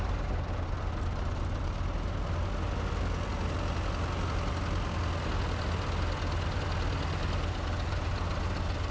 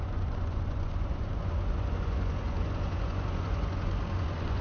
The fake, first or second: second